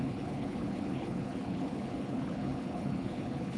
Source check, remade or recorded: remade